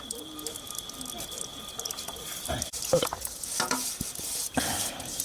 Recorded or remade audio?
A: recorded